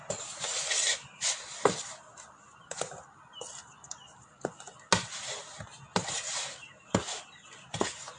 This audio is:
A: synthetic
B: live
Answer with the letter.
B